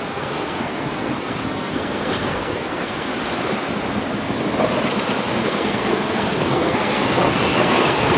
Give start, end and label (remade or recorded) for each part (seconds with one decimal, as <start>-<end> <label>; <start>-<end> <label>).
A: 0.0-3.1 remade; 3.1-5.4 recorded; 5.4-8.2 remade